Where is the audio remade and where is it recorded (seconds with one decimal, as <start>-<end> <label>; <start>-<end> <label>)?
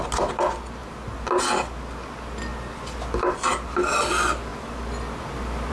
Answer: 0.0-5.7 recorded